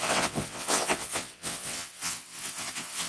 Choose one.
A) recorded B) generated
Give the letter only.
B